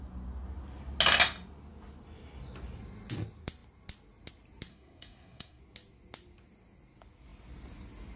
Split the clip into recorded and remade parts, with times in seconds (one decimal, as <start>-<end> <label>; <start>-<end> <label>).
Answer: 0.0-4.7 recorded; 4.7-5.6 remade; 5.6-8.2 recorded